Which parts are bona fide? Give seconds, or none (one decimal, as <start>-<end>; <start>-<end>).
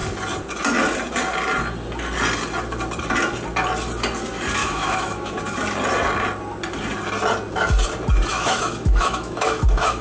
0.0-4.6; 5.4-8.3